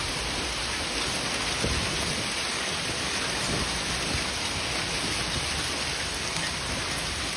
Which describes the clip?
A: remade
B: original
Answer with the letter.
B